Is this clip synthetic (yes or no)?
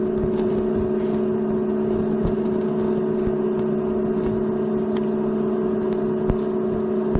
no